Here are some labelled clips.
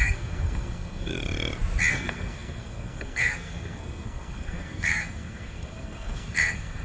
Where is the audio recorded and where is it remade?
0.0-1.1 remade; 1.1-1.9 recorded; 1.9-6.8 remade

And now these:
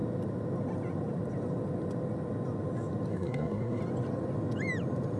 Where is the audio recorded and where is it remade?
0.0-3.1 recorded; 3.1-3.8 remade; 3.8-5.2 recorded

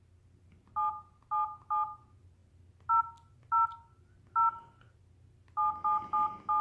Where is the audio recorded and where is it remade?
0.0-6.6 recorded

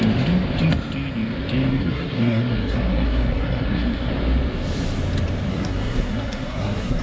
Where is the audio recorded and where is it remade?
0.0-1.7 recorded; 1.7-4.1 remade; 4.1-5.5 recorded; 5.5-7.0 remade

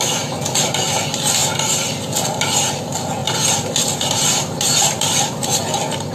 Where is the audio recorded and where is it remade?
0.0-6.1 recorded